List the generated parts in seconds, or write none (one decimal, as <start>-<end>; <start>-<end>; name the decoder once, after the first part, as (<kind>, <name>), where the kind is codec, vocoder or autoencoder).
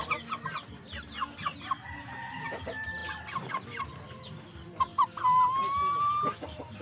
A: none